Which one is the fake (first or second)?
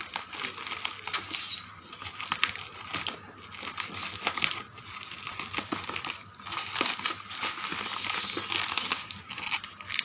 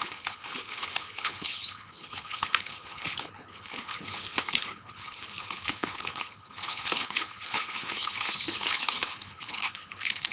second